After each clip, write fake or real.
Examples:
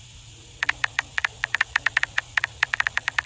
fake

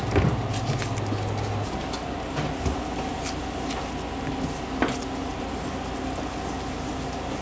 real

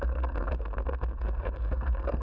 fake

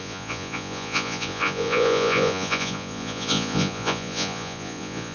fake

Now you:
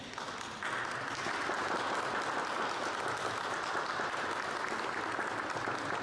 real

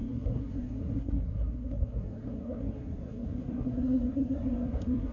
fake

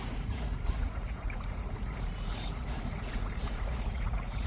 fake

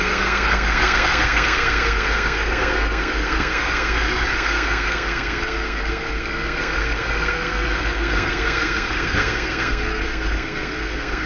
fake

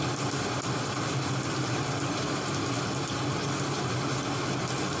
real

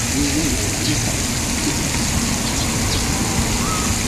real